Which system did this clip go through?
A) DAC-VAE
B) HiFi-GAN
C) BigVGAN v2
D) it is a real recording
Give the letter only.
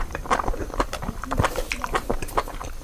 D